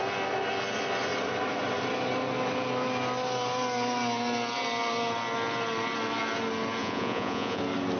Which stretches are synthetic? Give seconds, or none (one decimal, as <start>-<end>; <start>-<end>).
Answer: 6.8-7.6